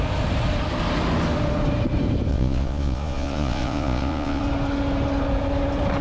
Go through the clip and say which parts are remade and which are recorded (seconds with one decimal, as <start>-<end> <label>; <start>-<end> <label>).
0.0-2.3 recorded; 2.3-4.4 remade; 4.4-6.0 recorded